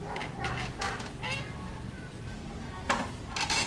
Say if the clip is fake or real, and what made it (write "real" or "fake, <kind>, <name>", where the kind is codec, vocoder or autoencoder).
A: real